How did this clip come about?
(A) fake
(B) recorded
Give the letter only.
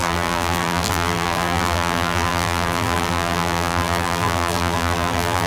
A